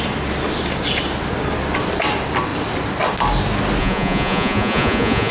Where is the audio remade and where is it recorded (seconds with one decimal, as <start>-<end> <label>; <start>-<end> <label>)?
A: 0.0-3.8 recorded; 3.8-5.3 remade